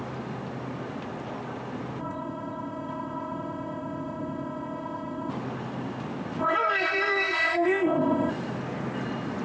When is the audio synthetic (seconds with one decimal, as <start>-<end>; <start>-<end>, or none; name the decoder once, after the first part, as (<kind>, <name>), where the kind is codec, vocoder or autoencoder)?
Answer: 2.0-5.3 (codec, ZipCodec); 6.4-8.3